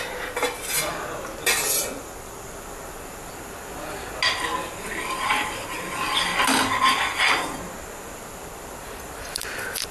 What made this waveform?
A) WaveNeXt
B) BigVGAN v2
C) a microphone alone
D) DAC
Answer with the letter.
B